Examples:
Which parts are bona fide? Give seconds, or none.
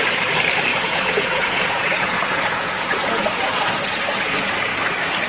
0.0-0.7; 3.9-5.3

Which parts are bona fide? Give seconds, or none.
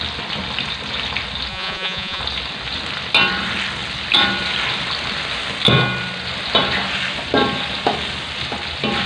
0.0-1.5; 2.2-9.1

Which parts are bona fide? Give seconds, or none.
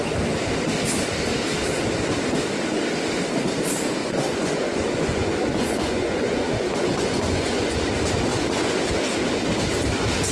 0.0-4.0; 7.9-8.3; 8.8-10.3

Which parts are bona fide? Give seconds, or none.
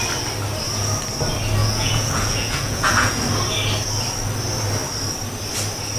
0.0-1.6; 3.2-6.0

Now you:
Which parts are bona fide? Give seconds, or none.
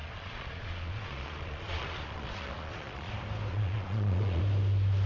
3.1-3.5; 4.4-5.1